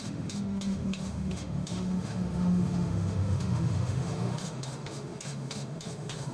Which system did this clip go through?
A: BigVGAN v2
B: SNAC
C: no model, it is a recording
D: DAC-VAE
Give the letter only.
D